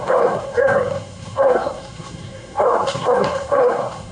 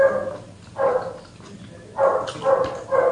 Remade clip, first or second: first